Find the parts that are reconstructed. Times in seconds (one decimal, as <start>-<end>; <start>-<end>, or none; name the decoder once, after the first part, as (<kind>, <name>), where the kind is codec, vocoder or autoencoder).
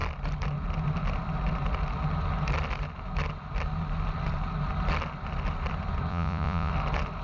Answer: 6.1-6.7 (vocoder, Vocos)